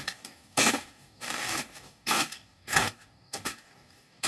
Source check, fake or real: fake